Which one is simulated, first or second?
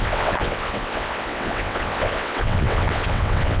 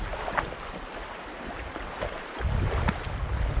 first